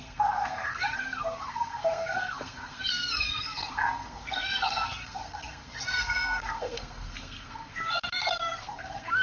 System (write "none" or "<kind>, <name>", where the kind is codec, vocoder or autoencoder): codec, SNAC